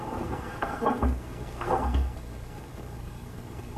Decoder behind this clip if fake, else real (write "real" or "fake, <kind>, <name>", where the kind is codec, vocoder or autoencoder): fake, codec, SNAC